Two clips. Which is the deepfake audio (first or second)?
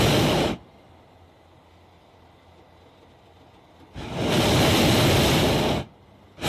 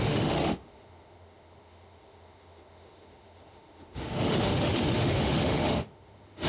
second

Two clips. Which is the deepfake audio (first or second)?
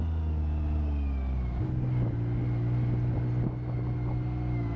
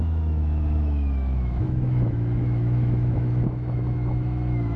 second